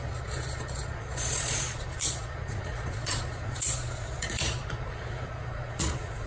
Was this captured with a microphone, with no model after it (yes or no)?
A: no